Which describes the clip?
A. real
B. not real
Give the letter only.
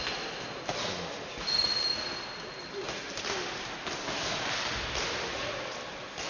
A